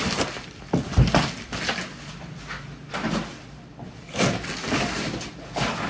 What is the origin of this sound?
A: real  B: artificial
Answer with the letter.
A